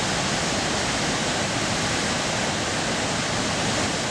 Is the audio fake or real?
real